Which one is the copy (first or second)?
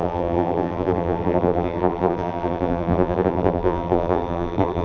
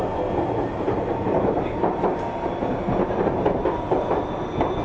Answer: first